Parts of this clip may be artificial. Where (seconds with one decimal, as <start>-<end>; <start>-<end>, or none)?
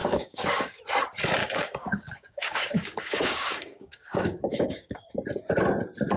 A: 0.0-0.8; 1.4-5.1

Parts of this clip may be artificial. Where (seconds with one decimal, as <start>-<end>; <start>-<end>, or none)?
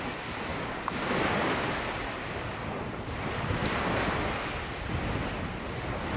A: 0.5-1.4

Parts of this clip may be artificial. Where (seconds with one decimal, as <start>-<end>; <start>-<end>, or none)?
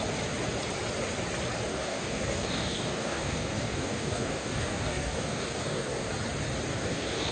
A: 1.7-6.1; 6.7-7.3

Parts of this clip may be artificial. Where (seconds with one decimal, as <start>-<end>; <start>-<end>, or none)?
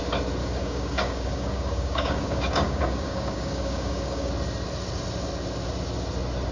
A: 0.4-4.3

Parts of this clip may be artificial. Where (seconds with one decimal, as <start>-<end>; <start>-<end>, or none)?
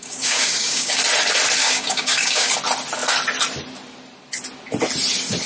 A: 0.0-1.0; 1.6-2.5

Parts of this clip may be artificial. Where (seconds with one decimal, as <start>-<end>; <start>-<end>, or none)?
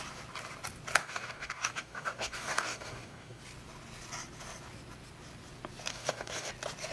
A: 1.0-3.4; 5.9-6.5